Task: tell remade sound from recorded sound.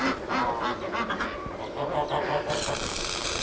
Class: recorded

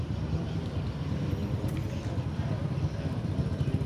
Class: remade